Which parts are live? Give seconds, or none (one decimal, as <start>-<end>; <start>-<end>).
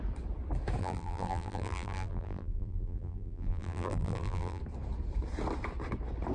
0.0-0.8; 4.6-6.3